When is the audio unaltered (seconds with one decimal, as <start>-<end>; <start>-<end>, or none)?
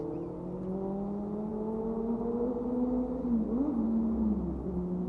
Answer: 0.0-5.1